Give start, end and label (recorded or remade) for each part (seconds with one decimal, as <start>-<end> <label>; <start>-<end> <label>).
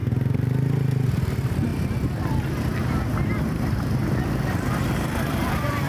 0.0-1.1 recorded; 1.1-1.7 remade; 1.7-3.3 recorded; 3.3-4.0 remade; 4.0-5.0 recorded; 5.0-5.9 remade